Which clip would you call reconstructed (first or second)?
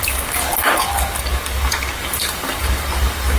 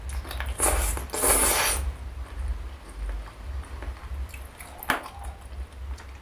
first